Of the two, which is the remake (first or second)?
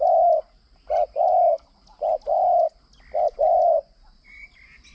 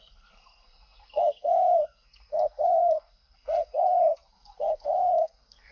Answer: second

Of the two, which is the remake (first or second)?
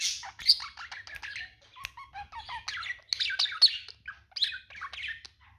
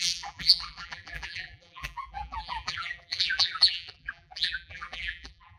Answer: second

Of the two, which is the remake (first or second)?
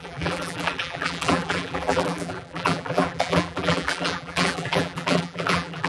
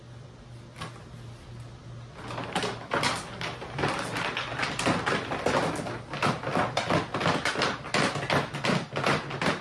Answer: first